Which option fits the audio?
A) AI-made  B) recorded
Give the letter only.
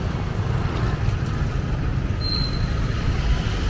B